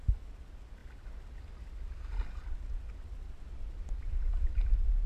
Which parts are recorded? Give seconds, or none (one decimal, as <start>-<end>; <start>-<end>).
0.0-5.1